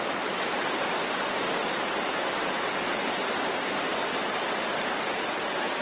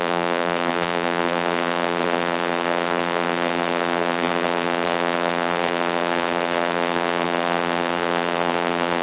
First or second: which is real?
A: first